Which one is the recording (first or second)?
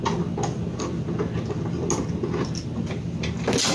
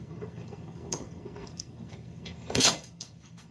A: first